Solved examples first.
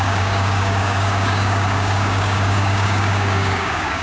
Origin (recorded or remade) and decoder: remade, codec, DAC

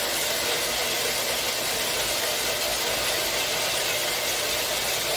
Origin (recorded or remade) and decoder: recorded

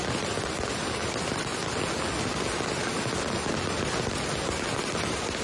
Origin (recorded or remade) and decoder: recorded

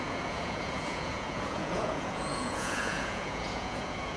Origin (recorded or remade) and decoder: remade, vocoder, Vocos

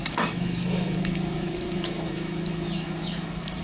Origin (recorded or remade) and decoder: remade, autoencoder, DAC-VAE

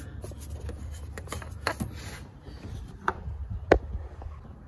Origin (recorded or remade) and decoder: remade, vocoder, BigVGAN v2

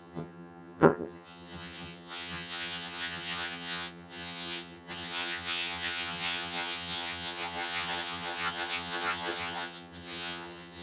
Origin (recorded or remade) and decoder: remade, vocoder, HiFi-GAN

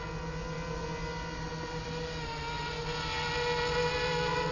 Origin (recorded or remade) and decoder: recorded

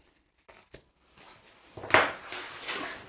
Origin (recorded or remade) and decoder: recorded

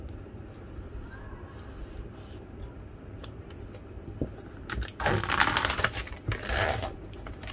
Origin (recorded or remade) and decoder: recorded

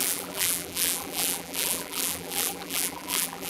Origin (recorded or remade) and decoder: remade, vocoder, BigVGAN v2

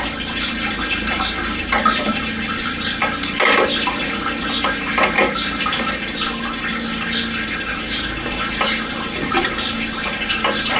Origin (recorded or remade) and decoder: recorded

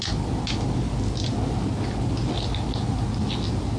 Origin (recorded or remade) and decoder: recorded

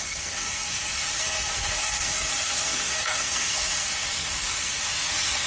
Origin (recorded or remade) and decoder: remade, codec, SNAC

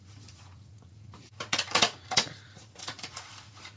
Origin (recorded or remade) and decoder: remade, vocoder, Vocos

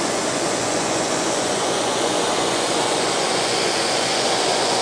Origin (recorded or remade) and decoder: remade, vocoder, Vocos